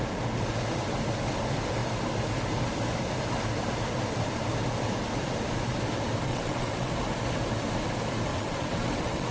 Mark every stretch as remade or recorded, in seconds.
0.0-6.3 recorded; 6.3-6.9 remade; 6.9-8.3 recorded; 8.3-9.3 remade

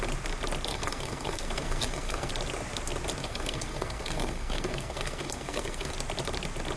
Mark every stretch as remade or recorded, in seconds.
0.0-0.7 recorded; 0.7-2.3 remade; 2.3-3.2 recorded; 3.2-5.9 remade; 5.9-6.8 recorded

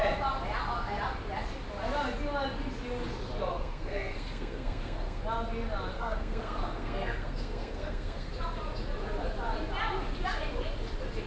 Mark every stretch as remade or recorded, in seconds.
0.0-3.5 recorded; 3.5-5.2 remade; 5.2-5.9 recorded; 5.9-8.3 remade; 8.3-11.3 recorded

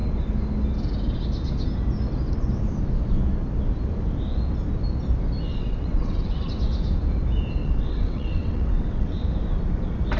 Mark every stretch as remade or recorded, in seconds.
0.0-5.5 recorded; 5.5-6.5 remade; 6.5-7.6 recorded; 7.6-9.2 remade; 9.2-10.2 recorded

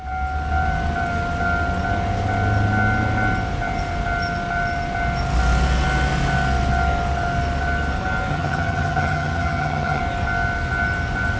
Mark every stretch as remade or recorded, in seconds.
0.0-8.3 recorded; 8.3-10.0 remade; 10.0-11.4 recorded

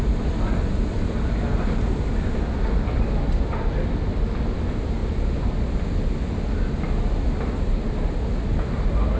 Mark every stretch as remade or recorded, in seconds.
0.0-9.2 recorded